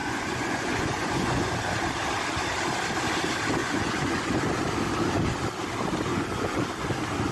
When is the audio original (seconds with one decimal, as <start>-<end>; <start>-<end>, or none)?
1.5-3.6; 4.2-6.1; 6.6-7.3